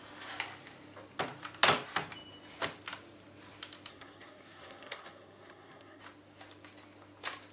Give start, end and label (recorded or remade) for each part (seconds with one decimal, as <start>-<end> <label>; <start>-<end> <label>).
0.0-3.9 recorded; 3.9-6.0 remade; 6.0-7.5 recorded